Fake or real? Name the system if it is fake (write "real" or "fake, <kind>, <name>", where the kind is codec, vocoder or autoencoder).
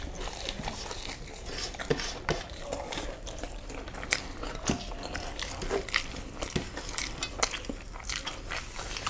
fake, vocoder, BigVGAN v2